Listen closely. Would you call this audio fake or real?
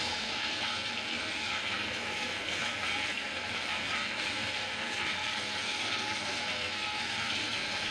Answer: fake